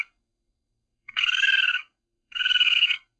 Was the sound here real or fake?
fake